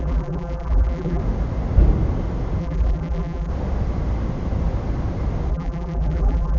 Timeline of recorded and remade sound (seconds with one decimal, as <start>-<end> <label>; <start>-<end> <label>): 0.0-1.2 remade; 1.2-2.6 recorded; 2.6-3.5 remade; 3.5-5.5 recorded; 5.5-6.6 remade